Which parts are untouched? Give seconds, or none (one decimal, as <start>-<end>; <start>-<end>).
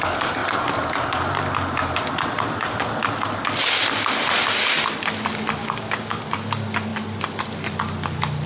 0.0-5.6; 6.2-8.5